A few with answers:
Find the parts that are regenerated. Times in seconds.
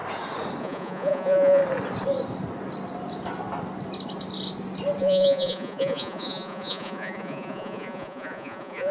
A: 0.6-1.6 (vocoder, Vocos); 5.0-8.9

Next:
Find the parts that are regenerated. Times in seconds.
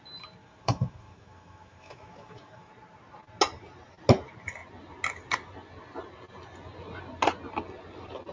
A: 0.4-2.7 (autoencoder, DAC-VAE)